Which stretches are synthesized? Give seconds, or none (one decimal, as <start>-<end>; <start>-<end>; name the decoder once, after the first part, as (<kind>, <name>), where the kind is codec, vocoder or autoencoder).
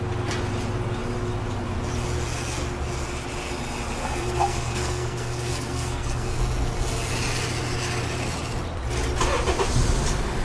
4.0-6.4 (codec, SNAC)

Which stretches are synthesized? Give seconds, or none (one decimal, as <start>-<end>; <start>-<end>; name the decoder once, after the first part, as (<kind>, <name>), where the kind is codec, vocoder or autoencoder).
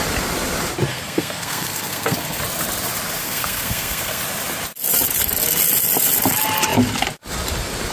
0.9-2.4 (codec, SNAC); 3.2-4.2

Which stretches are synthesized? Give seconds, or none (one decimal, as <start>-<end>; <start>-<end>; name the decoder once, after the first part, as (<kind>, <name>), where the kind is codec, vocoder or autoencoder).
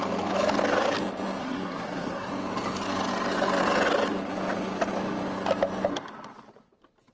1.4-2.3 (codec, SNAC)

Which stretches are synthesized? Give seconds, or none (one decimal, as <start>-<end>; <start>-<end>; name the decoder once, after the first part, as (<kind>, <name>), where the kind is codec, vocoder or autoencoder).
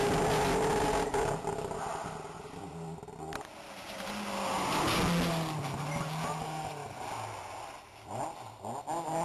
none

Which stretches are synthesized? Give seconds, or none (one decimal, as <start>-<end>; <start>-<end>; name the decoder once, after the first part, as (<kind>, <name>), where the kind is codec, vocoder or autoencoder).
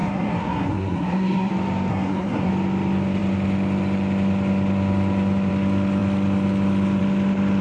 0.0-1.5 (codec, SNAC); 1.9-2.5